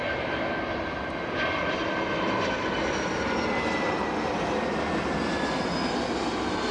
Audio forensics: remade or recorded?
recorded